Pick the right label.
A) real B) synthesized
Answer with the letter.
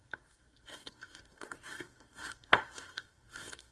B